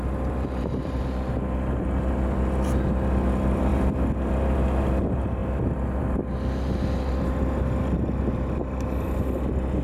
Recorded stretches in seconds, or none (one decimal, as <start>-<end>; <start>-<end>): 0.0-9.8